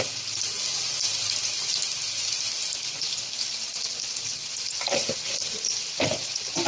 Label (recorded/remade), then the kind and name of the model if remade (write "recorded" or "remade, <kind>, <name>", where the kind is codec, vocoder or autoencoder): recorded